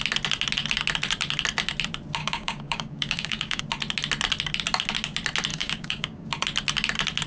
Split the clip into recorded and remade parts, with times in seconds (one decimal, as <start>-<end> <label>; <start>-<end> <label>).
0.0-2.2 recorded; 2.2-3.6 remade; 3.6-5.5 recorded; 5.5-6.3 remade; 6.3-7.3 recorded